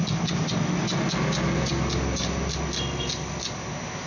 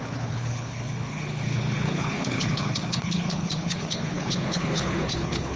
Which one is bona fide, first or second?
first